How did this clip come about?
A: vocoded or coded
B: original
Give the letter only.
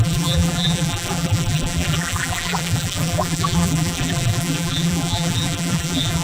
A